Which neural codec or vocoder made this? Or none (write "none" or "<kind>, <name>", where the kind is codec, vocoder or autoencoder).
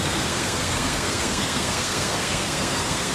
codec, SNAC